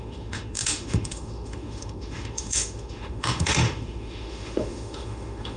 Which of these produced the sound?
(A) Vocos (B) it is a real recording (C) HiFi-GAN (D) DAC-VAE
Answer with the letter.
D